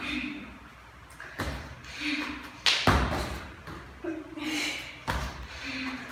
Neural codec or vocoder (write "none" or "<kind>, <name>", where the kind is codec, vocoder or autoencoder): none